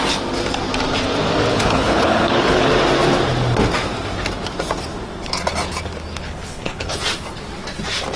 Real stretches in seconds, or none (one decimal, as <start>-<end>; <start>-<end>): 0.0-1.5; 2.7-6.2; 6.9-8.2